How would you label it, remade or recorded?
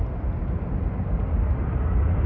recorded